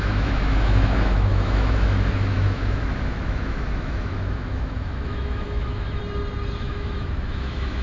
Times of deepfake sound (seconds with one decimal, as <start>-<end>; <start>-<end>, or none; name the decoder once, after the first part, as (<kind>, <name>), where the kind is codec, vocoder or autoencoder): 0.0-6.0 (autoencoder, DAC-VAE); 6.6-7.8